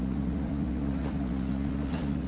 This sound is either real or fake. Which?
fake